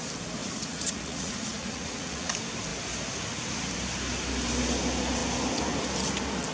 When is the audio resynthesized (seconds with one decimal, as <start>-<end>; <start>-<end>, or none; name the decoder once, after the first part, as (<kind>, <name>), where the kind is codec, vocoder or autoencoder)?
0.4-2.3 (vocoder, Vocos)